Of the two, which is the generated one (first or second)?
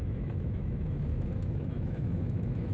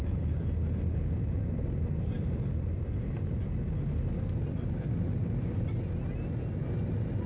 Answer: first